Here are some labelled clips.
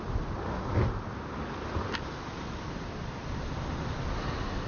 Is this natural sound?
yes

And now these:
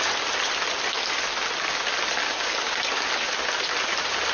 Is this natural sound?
yes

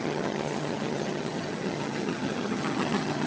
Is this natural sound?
no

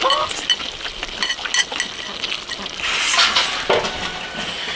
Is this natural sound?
yes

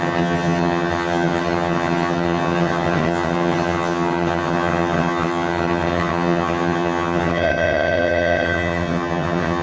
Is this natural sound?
no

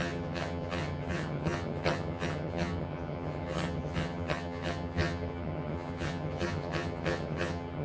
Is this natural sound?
no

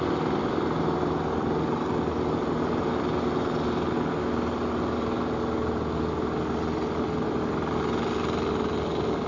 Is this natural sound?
yes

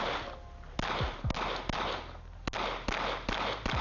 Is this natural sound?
yes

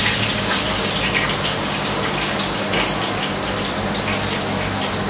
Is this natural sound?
yes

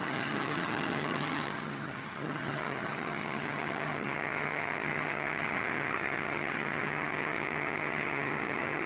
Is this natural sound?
no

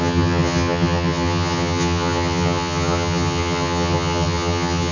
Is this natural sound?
no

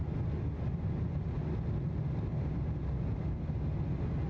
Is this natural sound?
yes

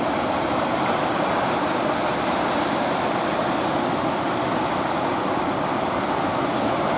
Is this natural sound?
yes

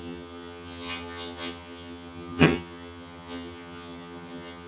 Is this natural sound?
no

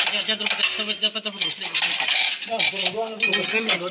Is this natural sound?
yes